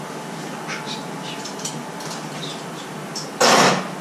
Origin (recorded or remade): recorded